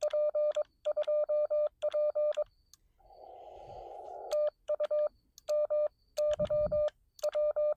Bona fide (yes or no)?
yes